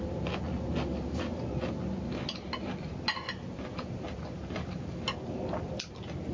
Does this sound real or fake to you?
real